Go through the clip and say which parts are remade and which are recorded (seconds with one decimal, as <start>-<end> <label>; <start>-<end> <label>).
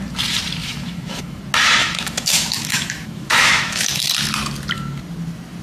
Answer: 0.0-0.6 recorded; 0.6-1.4 remade; 1.4-1.8 recorded; 1.8-4.1 remade; 4.1-5.6 recorded